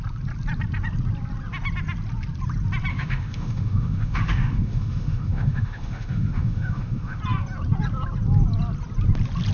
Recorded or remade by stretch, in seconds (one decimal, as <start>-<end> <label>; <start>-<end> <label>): 0.0-2.9 recorded; 2.9-7.2 remade; 7.2-9.5 recorded

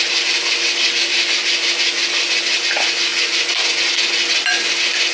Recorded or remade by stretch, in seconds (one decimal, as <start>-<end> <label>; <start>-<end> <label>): 0.0-5.1 recorded